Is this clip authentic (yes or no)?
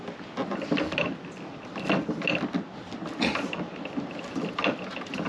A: yes